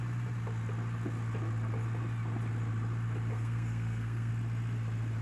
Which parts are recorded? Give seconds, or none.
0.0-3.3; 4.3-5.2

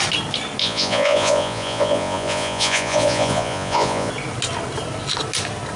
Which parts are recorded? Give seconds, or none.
0.0-0.6; 4.1-5.8

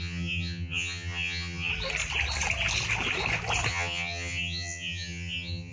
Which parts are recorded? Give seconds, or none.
1.7-3.7

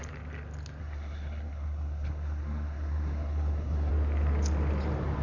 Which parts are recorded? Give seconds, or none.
0.0-0.8; 3.9-5.2

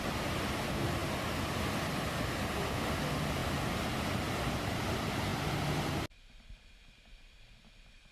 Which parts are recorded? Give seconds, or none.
0.0-8.1

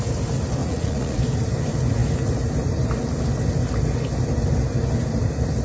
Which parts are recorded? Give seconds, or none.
0.0-0.6; 1.2-5.6

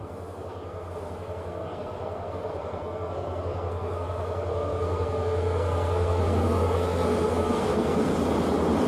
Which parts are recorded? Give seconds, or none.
8.1-8.9